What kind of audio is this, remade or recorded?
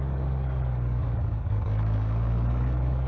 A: remade